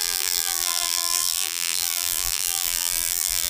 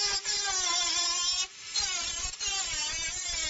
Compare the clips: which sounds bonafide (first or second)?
second